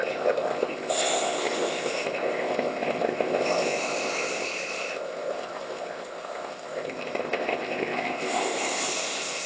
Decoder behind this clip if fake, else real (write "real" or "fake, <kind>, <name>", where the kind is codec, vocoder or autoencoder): fake, codec, ZipCodec